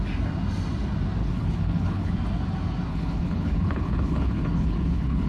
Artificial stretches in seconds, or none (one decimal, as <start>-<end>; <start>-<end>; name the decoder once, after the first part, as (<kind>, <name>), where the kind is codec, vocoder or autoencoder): 1.2-2.1 (codec, HILCodec); 2.9-5.3